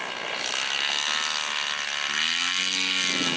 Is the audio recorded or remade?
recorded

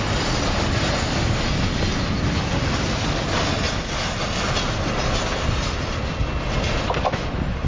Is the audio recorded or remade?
recorded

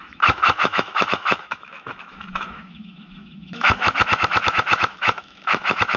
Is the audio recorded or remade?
remade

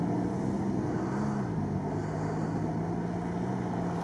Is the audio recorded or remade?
recorded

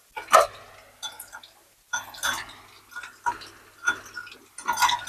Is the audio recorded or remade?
recorded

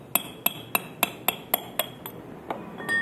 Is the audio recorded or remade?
recorded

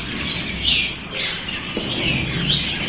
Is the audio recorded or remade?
recorded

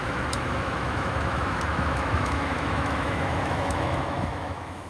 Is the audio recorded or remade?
remade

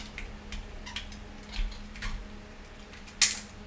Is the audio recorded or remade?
recorded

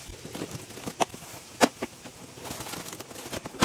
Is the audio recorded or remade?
recorded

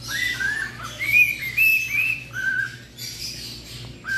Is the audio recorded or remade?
recorded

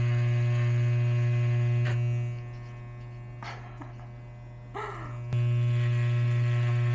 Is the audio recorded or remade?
recorded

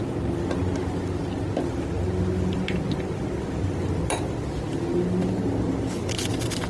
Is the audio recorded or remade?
recorded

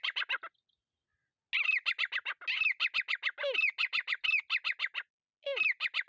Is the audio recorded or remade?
recorded